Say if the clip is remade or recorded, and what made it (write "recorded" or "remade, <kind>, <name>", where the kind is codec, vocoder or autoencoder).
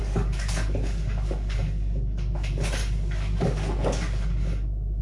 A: remade, codec, DAC